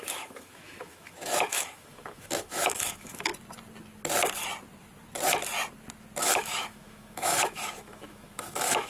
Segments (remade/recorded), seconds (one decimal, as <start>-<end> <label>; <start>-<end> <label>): 0.0-3.3 remade; 3.3-6.2 recorded; 6.2-8.9 remade